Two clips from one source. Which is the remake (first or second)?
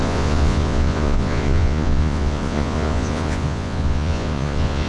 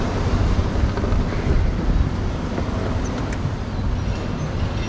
first